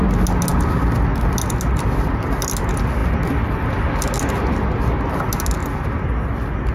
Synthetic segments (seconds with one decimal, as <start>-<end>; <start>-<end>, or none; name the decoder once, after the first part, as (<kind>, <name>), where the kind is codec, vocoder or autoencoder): none